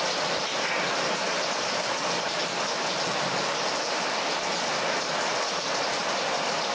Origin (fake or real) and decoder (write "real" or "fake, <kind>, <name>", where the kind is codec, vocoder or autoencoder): fake, vocoder, BigVGAN v2